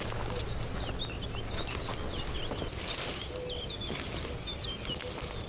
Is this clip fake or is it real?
real